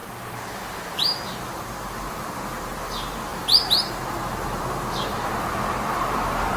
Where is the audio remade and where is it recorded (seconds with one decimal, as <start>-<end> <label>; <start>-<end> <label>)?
0.0-6.6 remade